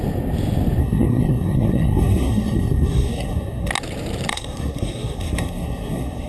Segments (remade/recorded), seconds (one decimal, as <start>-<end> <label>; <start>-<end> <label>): 0.0-0.8 recorded; 0.8-3.7 remade; 3.7-4.3 recorded; 4.3-6.3 remade